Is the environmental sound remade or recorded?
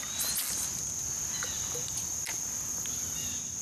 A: recorded